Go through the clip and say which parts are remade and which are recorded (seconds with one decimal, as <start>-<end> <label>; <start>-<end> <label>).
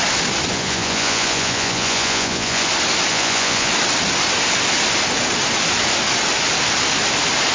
0.0-0.5 recorded; 0.5-2.7 remade; 2.7-3.1 recorded; 3.1-3.7 remade; 3.7-7.5 recorded